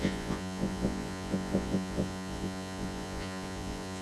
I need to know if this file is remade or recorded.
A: remade